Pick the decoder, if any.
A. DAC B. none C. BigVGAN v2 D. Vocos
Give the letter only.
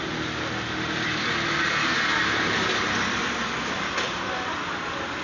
B